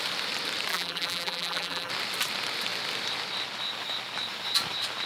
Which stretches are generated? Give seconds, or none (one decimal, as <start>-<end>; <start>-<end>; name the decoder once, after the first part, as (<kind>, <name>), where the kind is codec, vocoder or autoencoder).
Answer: 0.7-1.9 (vocoder, BigVGAN v2)